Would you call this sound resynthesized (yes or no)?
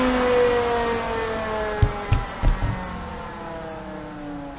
no